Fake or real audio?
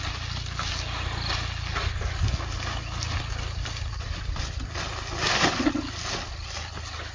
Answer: real